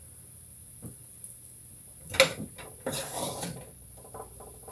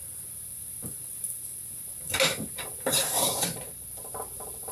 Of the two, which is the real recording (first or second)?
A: first